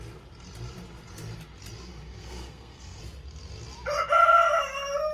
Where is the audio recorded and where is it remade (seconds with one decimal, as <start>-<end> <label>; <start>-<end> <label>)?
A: 0.0-1.9 recorded; 1.9-3.0 remade; 3.0-5.1 recorded